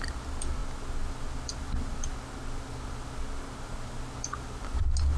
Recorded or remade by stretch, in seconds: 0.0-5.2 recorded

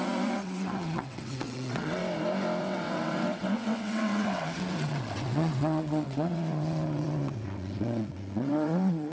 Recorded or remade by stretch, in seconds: 0.0-2.0 remade; 2.0-2.6 recorded; 2.6-9.1 remade

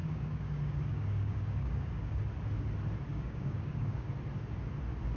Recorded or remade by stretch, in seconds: 0.0-2.2 remade; 2.2-3.1 recorded; 3.1-4.1 remade; 4.1-5.2 recorded

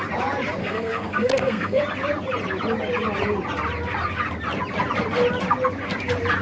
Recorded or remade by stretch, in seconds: 0.0-0.6 recorded; 0.6-1.8 remade; 1.8-6.4 recorded

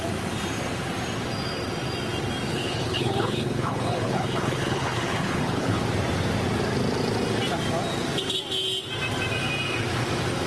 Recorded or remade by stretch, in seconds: 0.0-2.5 recorded; 2.5-5.8 remade; 5.8-10.5 recorded

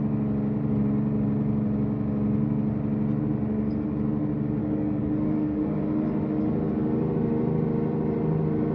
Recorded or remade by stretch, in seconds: 0.0-4.6 recorded; 4.6-5.8 remade; 5.8-8.7 recorded

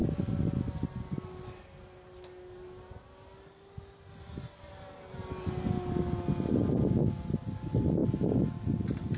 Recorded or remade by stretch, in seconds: 0.0-4.6 remade; 4.6-9.2 recorded